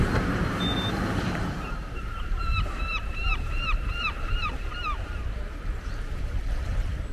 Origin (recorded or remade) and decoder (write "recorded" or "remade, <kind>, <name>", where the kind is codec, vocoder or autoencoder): remade, vocoder, BigVGAN v2